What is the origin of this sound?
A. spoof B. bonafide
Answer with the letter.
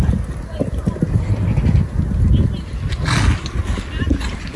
B